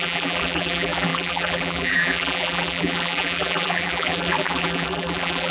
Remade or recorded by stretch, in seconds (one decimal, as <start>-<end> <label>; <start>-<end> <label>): 0.0-5.5 remade